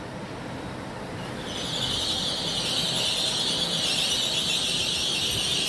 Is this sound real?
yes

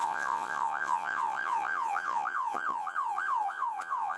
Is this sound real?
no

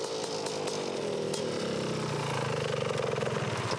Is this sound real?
yes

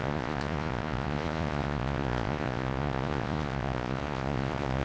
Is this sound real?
no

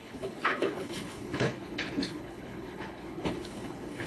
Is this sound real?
no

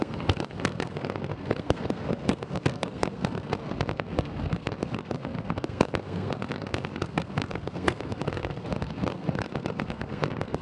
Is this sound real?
no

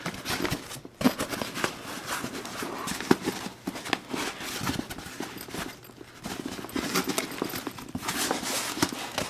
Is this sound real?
yes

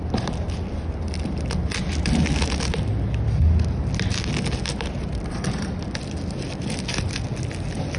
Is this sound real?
yes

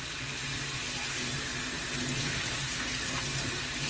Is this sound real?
yes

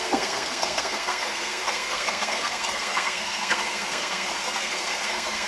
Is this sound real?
no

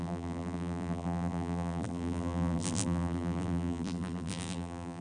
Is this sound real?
no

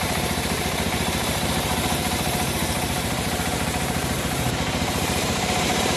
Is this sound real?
no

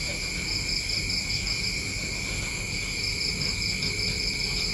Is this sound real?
yes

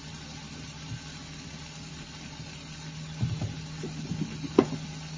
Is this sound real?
yes